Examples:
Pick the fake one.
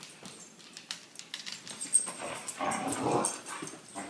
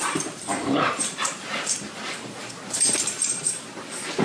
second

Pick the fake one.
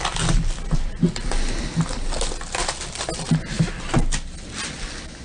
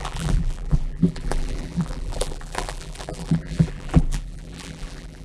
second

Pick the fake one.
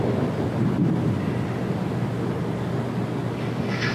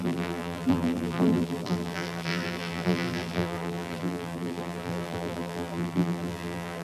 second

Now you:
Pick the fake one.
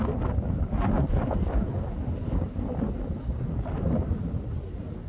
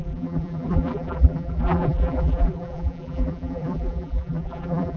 second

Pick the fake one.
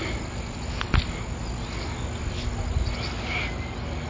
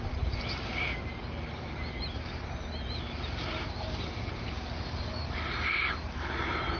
second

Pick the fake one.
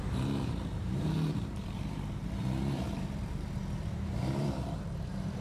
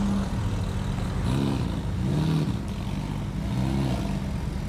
first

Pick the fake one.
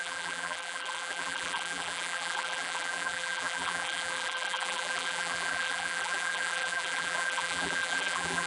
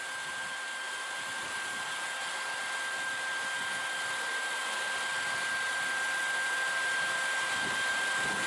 first